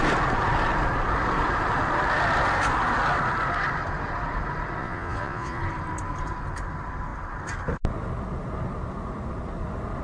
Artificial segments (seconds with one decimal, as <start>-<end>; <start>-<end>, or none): 4.8-5.6